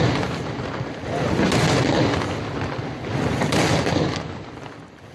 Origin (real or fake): real